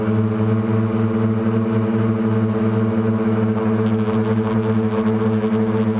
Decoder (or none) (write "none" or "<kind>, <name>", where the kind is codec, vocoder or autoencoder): none